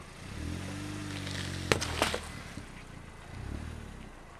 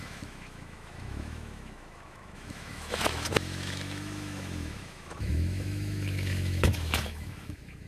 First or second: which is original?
first